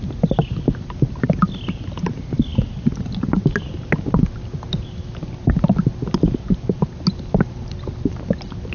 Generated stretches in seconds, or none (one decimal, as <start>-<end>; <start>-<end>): none